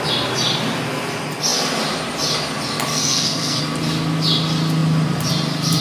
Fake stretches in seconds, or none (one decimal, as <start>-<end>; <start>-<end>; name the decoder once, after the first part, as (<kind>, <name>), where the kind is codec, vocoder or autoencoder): 2.9-3.6 (codec, SNAC)